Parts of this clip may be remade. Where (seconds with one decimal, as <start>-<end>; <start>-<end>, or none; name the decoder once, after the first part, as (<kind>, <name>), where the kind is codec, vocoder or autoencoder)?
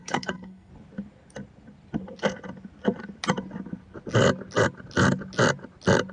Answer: 0.0-0.7 (codec, SNAC)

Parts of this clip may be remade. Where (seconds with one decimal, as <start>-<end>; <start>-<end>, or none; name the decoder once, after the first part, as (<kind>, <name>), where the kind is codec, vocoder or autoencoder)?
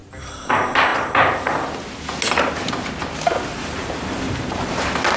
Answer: 0.0-0.5 (vocoder, BigVGAN v2); 3.5-4.7